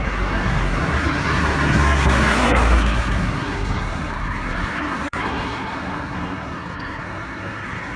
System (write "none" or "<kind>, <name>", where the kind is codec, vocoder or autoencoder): codec, SNAC